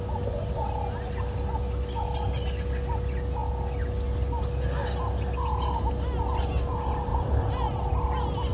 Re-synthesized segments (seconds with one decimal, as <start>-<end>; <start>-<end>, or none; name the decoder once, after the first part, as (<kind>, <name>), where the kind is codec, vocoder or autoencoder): 7.1-7.9 (vocoder, BigVGAN v2)